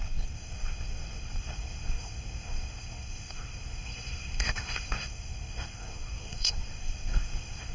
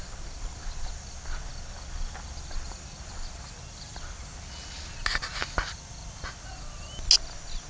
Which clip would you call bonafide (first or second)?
second